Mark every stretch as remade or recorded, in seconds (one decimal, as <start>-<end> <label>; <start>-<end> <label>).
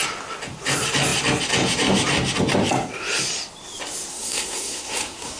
0.0-4.1 recorded; 4.1-5.4 remade